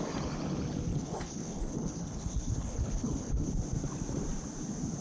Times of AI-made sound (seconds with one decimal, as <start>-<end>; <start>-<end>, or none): 0.9-3.5